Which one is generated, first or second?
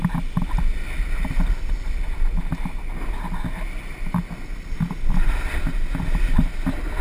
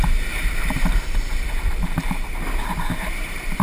second